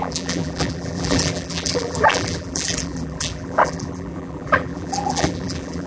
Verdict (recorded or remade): remade